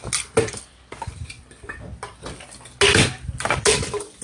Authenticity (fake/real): real